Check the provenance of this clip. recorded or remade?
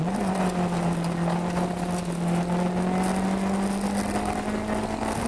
recorded